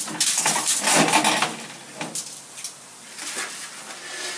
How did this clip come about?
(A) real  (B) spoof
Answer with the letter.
A